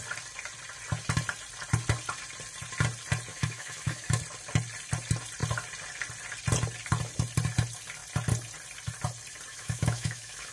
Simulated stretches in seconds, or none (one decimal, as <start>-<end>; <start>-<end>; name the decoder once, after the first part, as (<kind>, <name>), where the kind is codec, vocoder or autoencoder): 3.3-4.2 (autoencoder, DAC-VAE); 9.5-10.5